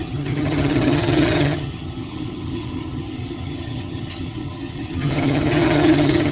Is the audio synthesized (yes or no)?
yes